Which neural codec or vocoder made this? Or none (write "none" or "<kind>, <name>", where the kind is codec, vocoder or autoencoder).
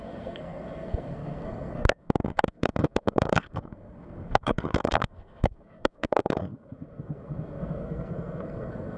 codec, SNAC